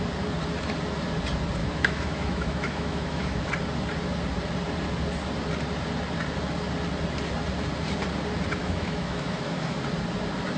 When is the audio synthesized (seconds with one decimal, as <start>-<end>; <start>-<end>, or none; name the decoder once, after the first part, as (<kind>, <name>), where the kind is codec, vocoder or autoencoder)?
1.6-3.4 (autoencoder, DAC-VAE); 8.6-9.8